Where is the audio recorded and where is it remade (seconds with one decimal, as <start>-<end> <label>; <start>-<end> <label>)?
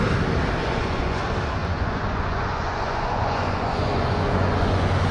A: 0.0-0.6 recorded; 0.6-1.2 remade; 1.2-1.6 recorded; 1.6-5.1 remade